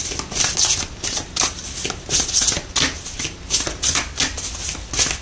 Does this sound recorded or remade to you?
recorded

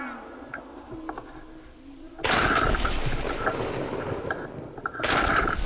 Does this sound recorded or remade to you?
recorded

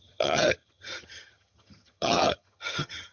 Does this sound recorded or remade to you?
remade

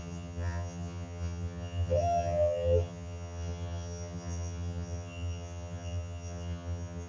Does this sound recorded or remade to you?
remade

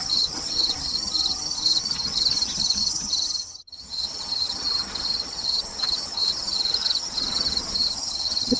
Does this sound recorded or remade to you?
remade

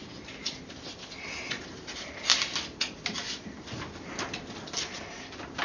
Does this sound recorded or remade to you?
recorded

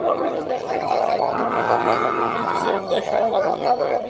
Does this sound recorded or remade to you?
remade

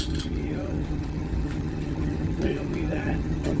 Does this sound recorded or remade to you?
remade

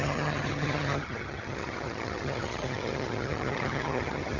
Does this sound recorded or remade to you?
remade